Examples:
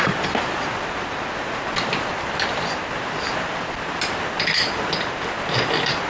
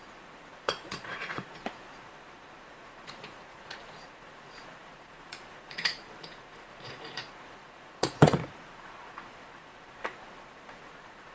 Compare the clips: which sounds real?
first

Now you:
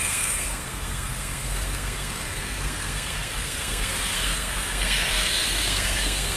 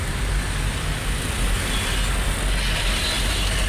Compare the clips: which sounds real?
second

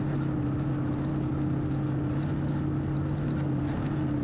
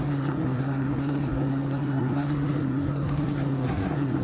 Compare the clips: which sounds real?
first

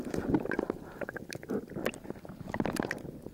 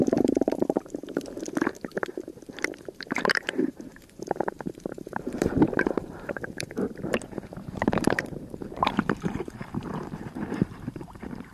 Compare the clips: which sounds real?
first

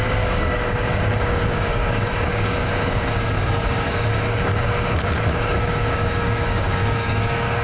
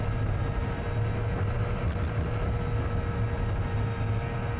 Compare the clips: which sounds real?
second